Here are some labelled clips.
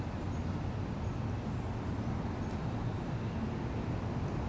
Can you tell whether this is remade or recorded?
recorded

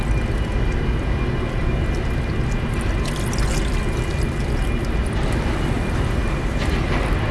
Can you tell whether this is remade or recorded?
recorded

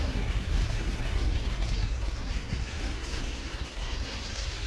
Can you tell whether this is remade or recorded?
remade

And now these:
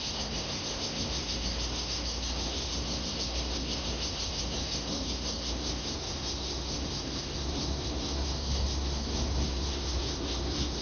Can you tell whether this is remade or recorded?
remade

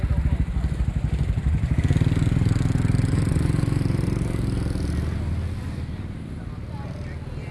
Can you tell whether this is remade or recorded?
recorded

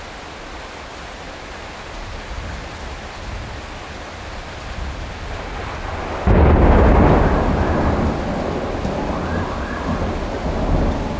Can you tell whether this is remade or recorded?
recorded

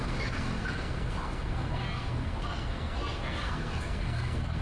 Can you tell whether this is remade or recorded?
remade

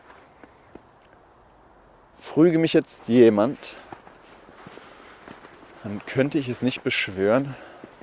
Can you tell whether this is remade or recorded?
recorded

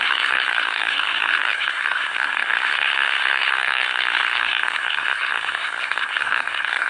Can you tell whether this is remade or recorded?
remade